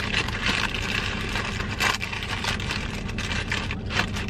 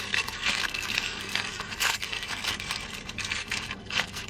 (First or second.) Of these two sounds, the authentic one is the first